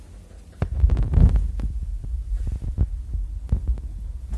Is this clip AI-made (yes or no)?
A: no